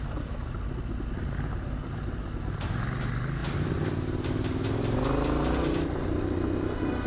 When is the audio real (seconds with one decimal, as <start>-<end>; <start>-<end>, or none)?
0.0-7.1